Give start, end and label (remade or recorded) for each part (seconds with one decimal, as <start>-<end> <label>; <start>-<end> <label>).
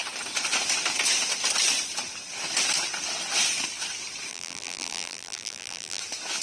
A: 0.0-4.3 recorded; 4.3-6.0 remade; 6.0-6.4 recorded